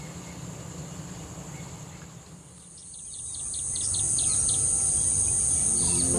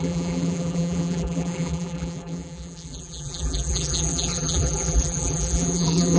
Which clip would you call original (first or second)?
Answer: first